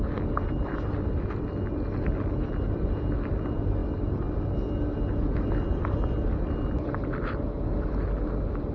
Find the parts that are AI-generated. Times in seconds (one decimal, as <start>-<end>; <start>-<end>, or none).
none